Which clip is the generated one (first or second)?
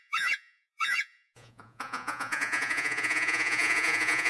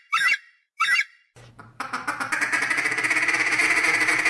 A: first